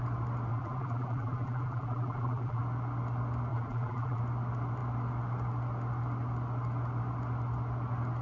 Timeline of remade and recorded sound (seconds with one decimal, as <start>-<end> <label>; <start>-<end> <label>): 0.0-0.5 recorded; 0.5-2.6 remade; 2.6-3.5 recorded; 3.5-4.2 remade; 4.2-8.2 recorded